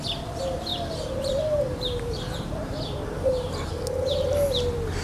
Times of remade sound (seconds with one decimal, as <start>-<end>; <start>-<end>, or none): 0.7-3.7